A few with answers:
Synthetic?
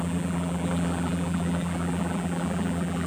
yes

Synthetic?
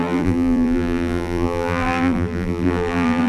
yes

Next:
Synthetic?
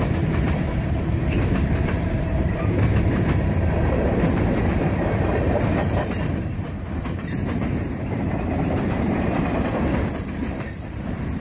yes